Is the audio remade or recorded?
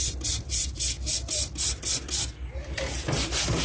recorded